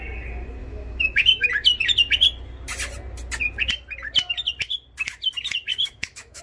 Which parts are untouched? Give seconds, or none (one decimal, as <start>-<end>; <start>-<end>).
0.0-0.6; 1.5-5.7